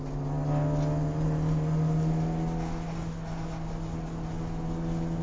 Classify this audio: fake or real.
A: real